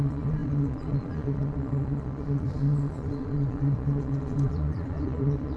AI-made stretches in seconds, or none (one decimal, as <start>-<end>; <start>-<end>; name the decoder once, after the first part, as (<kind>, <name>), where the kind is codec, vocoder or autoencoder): 0.0-5.6 (vocoder, Vocos)